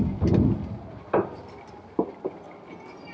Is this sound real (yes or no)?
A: yes